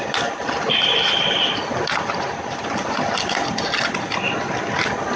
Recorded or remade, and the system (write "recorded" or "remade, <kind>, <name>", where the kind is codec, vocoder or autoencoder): recorded